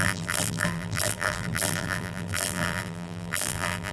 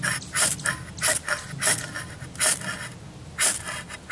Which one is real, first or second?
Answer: second